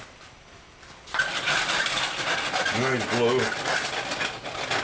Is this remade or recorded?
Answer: recorded